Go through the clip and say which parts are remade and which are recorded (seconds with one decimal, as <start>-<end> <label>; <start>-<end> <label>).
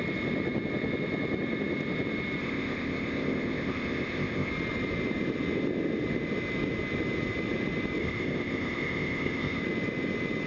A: 0.0-2.4 recorded; 2.4-4.5 remade; 4.5-8.0 recorded; 8.0-9.6 remade; 9.6-10.5 recorded